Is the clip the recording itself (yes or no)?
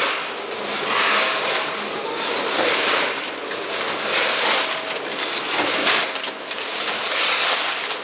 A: yes